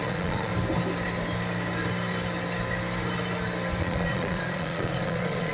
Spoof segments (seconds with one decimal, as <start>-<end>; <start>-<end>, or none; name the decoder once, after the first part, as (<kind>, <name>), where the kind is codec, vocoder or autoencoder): 0.0-0.5 (vocoder, Vocos); 3.8-5.5